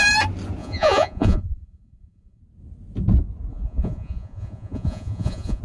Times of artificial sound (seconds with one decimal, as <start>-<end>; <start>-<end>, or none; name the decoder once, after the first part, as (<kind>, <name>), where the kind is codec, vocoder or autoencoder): 0.6-2.4 (vocoder, Vocos); 3.5-5.6